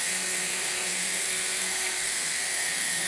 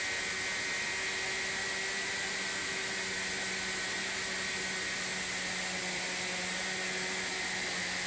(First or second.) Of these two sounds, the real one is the second